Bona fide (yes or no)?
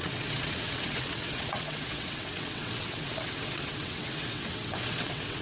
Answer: no